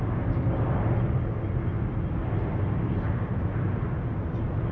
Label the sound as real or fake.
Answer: real